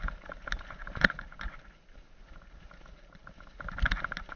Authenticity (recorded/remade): recorded